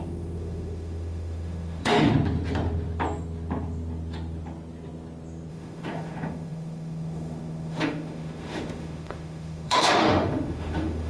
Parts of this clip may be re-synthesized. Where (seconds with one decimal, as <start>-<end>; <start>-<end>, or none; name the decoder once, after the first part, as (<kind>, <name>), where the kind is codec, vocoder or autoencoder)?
0.0-2.1 (autoencoder, DAC-VAE); 5.5-11.1